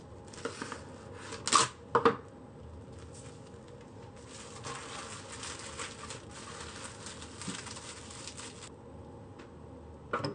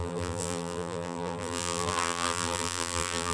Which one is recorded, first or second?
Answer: first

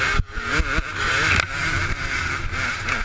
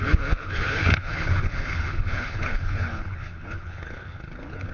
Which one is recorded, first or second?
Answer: first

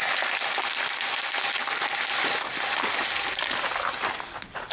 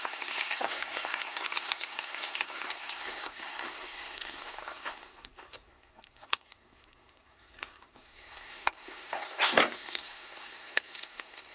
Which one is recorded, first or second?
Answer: first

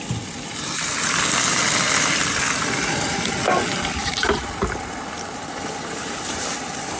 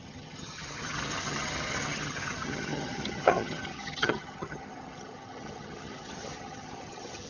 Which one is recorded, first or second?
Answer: first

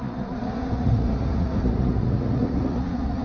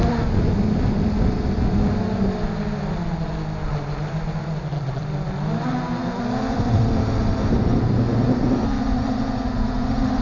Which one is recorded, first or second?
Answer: second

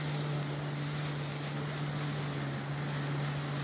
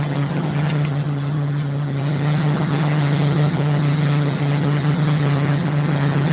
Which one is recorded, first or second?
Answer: first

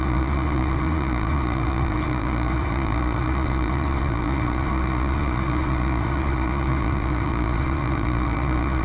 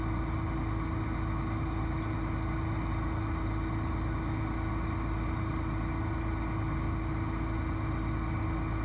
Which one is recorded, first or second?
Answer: second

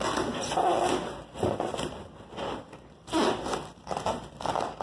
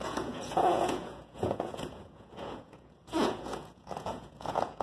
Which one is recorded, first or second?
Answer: first